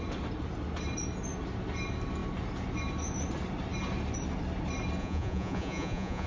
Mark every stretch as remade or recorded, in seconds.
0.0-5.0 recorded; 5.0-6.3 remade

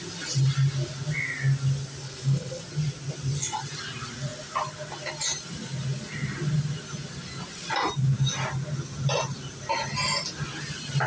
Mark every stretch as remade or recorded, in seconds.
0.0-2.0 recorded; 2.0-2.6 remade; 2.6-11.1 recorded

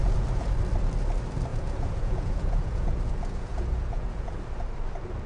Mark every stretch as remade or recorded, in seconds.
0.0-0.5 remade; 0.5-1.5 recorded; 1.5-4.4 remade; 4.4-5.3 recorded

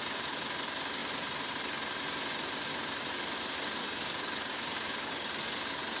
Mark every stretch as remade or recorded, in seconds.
0.0-3.8 recorded; 3.8-5.3 remade; 5.3-6.0 recorded

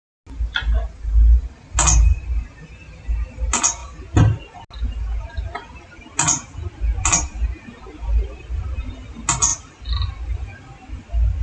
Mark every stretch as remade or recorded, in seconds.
0.0-11.4 recorded

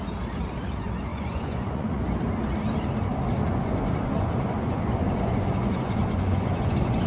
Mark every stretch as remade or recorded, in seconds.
0.0-1.1 recorded; 1.1-2.0 remade; 2.0-3.4 recorded; 3.4-7.1 remade

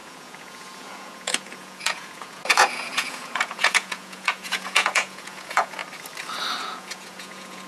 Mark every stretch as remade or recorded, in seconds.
0.0-5.8 remade; 5.8-6.6 recorded; 6.6-7.7 remade